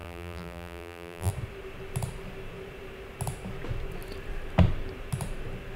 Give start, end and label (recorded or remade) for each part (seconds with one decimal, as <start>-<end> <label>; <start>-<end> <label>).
0.0-1.3 remade; 1.3-5.8 recorded